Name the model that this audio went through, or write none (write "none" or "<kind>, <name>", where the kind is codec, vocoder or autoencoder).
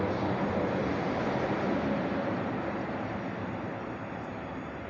vocoder, BigVGAN v2